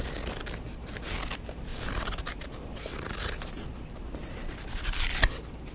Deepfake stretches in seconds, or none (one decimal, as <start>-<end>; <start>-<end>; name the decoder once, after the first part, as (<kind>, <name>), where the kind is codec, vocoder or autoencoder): 1.7-5.1 (vocoder, BigVGAN v2)